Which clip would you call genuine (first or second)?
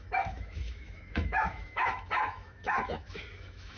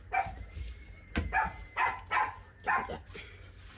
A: second